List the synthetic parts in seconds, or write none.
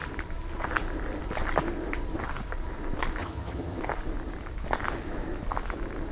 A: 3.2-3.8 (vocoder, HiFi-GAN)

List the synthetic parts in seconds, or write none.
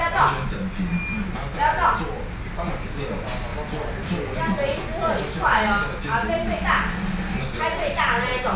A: none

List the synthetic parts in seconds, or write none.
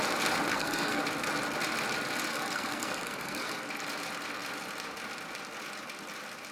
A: 0.5-1.0 (codec, SNAC); 2.3-3.7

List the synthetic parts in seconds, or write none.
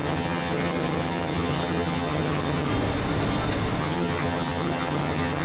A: 0.0-2.7 (vocoder, HiFi-GAN); 3.8-5.4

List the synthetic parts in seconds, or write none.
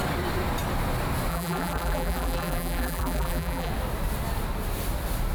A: 1.3-3.7 (vocoder, BigVGAN v2)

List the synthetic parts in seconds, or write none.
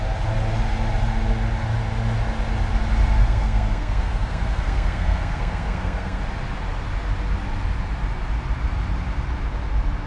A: 3.2-6.2 (codec, SNAC)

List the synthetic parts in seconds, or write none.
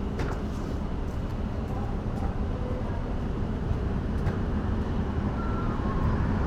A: 0.0-6.5 (vocoder, BigVGAN v2)